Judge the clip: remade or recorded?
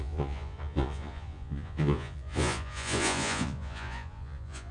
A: remade